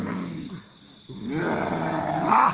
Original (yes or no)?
yes